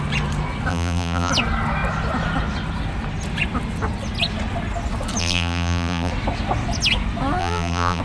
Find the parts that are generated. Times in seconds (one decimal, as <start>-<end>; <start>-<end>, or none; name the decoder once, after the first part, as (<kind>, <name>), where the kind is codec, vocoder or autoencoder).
0.7-1.3 (vocoder, BigVGAN v2); 5.2-6.1; 7.4-8.0